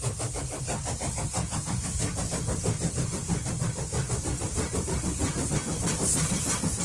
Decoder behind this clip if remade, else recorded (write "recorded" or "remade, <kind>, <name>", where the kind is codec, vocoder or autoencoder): recorded